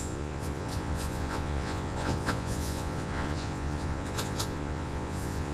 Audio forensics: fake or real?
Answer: fake